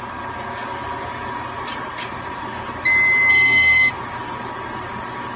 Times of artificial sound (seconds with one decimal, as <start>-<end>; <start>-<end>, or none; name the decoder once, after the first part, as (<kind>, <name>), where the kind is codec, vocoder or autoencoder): 3.3-3.9 (codec, SNAC)